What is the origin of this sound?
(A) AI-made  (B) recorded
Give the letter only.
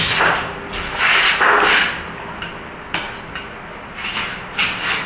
B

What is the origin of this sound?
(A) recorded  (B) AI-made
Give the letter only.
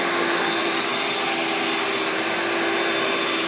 A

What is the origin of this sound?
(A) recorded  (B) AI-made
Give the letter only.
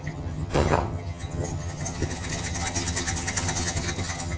B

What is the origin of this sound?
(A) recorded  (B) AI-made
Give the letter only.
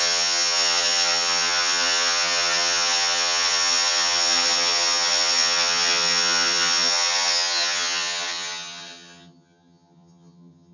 B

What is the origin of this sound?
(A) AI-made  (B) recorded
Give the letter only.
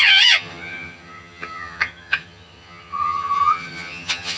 A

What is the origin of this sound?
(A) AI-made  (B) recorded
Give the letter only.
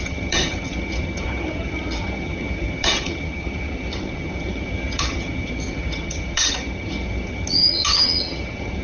A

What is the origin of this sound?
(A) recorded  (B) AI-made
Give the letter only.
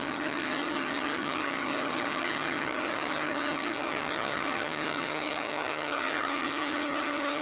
B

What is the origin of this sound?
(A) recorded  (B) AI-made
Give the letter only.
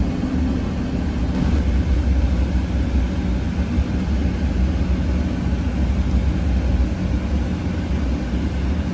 A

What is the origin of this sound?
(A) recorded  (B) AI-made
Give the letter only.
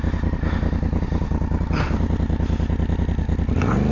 A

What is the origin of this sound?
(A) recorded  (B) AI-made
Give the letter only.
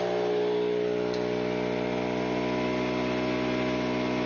A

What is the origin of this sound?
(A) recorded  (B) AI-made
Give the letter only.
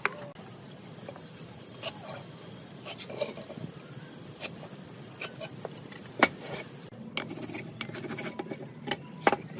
A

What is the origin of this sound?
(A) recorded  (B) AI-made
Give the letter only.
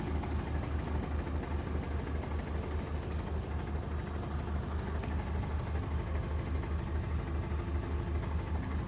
A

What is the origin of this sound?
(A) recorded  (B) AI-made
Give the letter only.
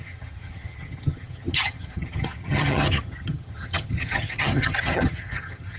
B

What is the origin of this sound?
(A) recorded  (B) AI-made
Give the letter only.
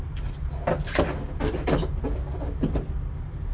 A